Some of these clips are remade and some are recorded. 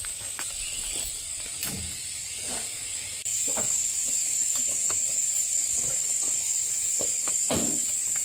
remade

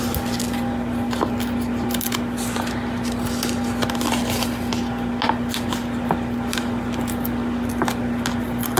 recorded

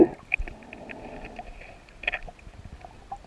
recorded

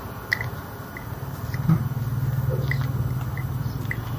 recorded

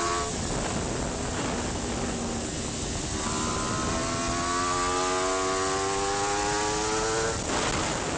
recorded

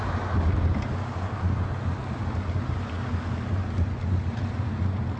recorded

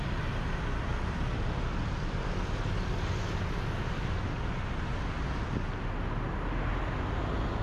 recorded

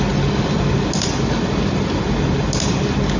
recorded